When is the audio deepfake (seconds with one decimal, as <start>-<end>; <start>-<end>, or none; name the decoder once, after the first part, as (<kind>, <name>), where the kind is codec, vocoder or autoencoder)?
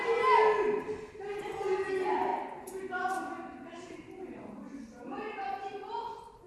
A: none